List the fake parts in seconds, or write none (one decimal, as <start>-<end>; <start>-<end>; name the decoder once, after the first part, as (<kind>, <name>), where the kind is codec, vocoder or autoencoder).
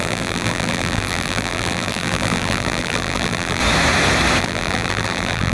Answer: 0.0-3.6 (vocoder, BigVGAN v2); 4.4-5.5